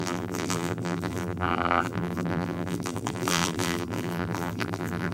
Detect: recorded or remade remade